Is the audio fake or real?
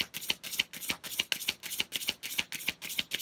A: real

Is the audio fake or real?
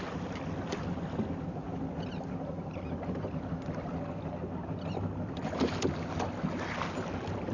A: real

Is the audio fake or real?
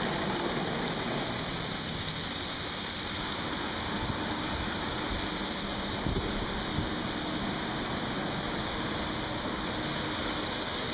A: real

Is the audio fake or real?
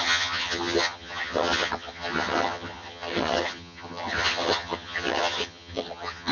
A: fake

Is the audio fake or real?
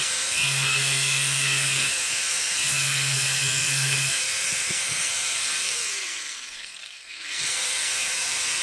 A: fake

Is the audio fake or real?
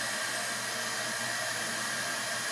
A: real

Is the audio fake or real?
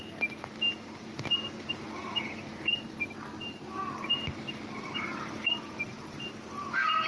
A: real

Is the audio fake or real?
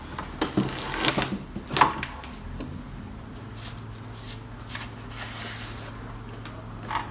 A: real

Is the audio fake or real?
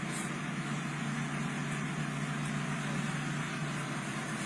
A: real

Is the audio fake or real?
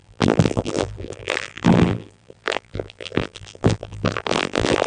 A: fake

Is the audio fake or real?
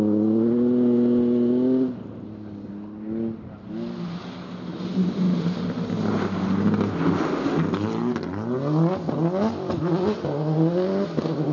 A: real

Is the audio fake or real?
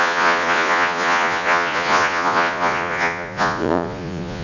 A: fake